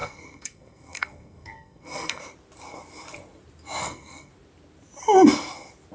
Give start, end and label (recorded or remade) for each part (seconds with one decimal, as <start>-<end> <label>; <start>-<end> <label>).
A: 0.0-2.2 remade; 2.2-3.8 recorded; 3.8-4.3 remade; 4.3-5.9 recorded